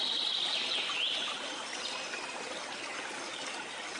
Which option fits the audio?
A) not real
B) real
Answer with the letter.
B